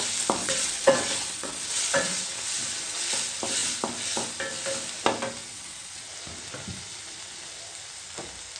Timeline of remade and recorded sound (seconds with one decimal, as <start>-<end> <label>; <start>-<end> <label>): 0.0-0.4 recorded; 0.4-3.1 remade; 3.1-5.4 recorded; 5.4-6.1 remade; 6.1-8.6 recorded